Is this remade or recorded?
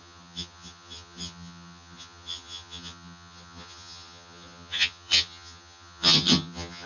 remade